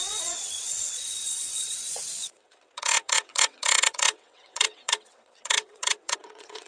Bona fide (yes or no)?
no